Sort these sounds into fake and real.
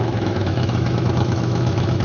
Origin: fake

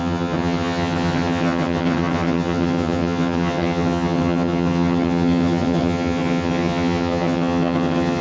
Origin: fake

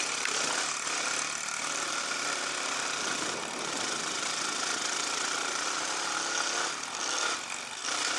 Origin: real